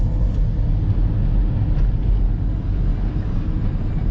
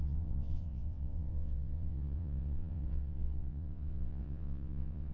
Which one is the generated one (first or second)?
second